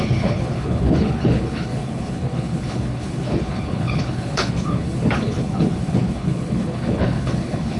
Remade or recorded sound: remade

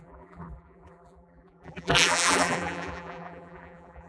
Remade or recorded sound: remade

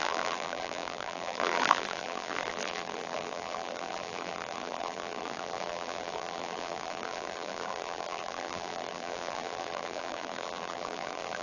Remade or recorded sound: remade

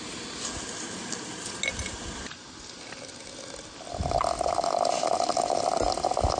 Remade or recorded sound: recorded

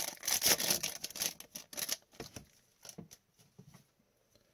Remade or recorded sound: recorded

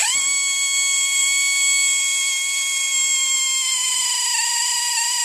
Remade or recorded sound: recorded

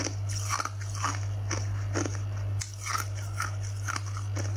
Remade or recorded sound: recorded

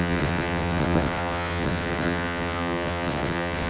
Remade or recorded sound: remade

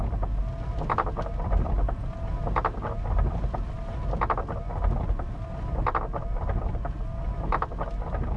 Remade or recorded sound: recorded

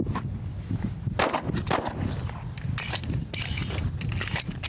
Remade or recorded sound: recorded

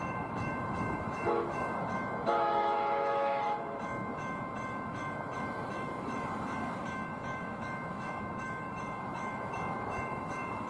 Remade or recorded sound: remade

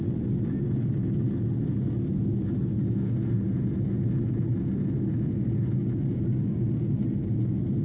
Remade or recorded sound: recorded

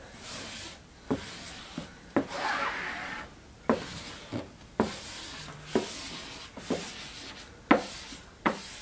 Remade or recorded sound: recorded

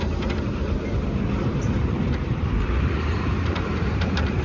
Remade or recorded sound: remade